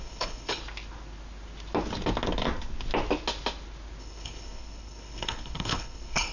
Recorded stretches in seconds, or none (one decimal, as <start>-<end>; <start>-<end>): 0.6-4.0